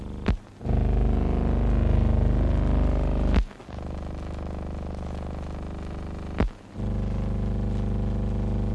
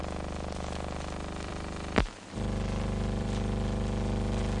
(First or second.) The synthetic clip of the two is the second